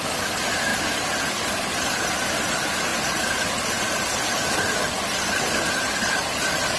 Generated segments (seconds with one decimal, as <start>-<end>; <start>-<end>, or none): none